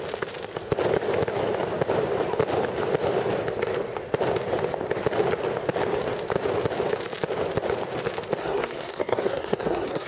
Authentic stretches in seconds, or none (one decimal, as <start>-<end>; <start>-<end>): 0.0-8.4